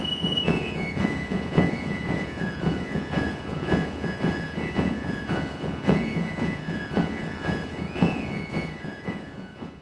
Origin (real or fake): fake